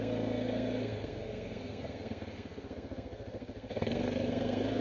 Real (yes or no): no